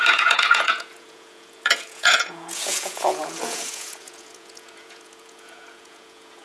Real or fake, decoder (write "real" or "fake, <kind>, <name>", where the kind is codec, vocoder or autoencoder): fake, vocoder, Vocos